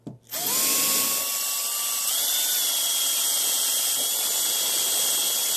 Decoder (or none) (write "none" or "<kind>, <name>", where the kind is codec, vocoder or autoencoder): none